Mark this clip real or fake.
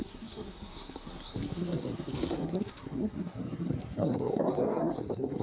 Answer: fake